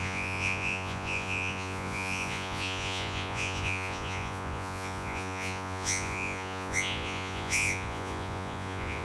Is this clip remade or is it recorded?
remade